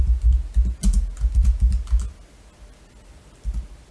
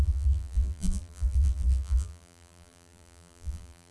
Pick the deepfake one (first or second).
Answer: second